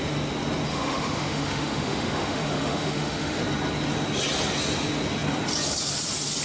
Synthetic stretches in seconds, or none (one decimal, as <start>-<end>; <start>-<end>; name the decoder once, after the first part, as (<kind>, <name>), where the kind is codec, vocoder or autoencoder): 0.7-3.4 (autoencoder, DAC-VAE)